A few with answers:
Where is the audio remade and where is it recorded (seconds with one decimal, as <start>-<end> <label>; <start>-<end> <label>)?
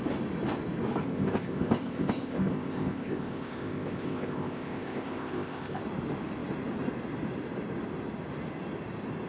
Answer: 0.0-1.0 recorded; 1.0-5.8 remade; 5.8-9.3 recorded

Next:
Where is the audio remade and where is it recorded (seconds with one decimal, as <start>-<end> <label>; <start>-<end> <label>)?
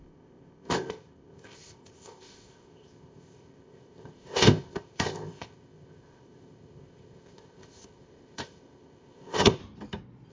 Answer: 0.0-9.6 remade; 9.6-10.3 recorded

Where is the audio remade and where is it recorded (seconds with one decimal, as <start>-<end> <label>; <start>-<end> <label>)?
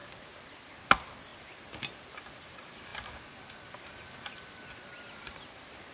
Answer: 0.0-5.9 recorded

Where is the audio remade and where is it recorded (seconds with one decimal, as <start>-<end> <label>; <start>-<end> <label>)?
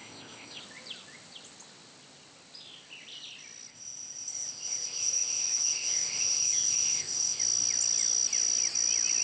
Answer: 0.0-0.6 remade; 0.6-3.7 recorded; 3.7-7.4 remade; 7.4-9.2 recorded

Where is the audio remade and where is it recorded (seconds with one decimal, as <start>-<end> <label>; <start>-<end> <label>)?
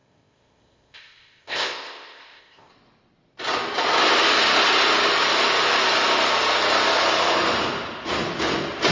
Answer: 0.0-2.7 remade; 2.7-8.9 recorded